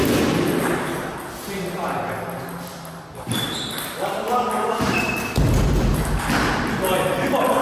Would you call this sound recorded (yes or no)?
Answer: yes